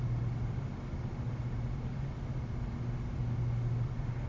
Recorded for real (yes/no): yes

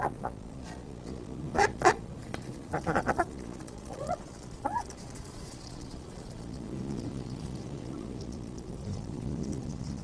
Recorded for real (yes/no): no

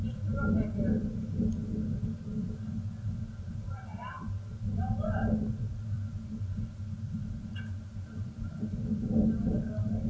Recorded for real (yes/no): yes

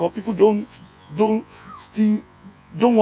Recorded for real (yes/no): no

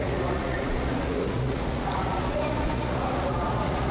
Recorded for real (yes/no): no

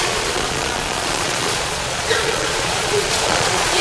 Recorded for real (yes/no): no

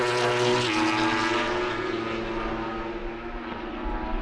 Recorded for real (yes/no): yes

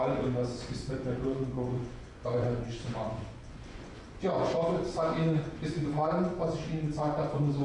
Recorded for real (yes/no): no